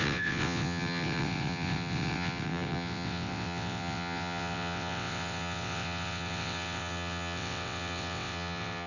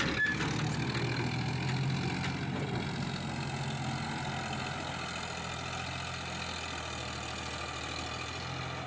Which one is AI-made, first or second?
first